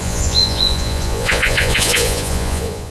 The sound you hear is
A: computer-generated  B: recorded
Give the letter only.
A